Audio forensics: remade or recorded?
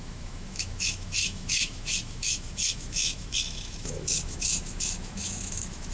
remade